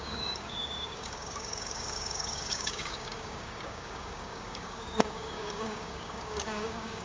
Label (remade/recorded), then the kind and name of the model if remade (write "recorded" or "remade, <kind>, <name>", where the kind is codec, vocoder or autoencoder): remade, codec, DAC